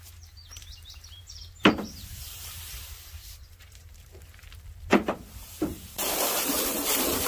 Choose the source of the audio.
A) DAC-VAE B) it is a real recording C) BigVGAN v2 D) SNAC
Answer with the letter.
C